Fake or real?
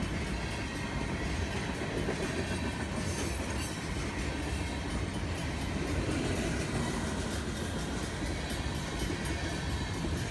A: real